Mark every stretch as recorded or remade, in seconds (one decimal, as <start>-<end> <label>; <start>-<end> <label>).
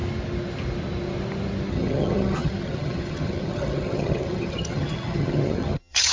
0.0-1.7 recorded; 1.7-6.1 remade